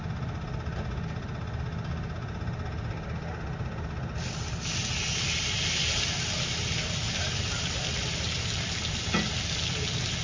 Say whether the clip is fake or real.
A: real